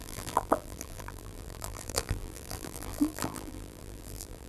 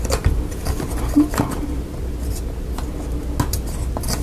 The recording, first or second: second